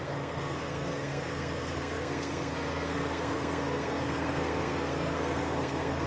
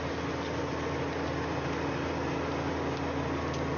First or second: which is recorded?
second